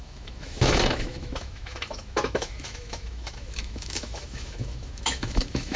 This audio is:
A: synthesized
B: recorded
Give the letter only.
A